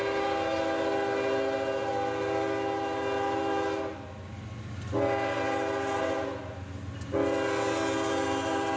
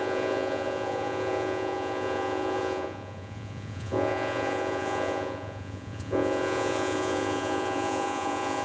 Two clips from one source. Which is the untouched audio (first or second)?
first